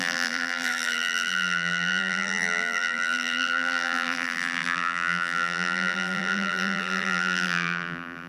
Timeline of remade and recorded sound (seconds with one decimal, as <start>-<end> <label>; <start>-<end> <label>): 0.0-8.3 remade